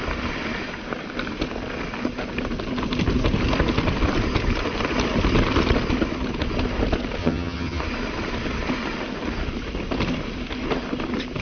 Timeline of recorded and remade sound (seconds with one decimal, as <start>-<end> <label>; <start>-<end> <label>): 0.0-7.2 recorded; 7.2-7.8 remade; 7.8-11.4 recorded